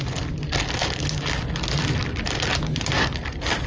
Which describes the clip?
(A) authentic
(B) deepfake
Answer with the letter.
A